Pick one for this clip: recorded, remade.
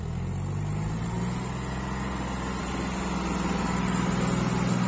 recorded